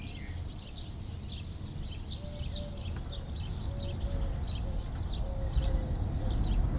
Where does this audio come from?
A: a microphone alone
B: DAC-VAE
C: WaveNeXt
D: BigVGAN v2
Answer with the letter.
A